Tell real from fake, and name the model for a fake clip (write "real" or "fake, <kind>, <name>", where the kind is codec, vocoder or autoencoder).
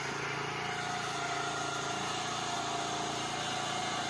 real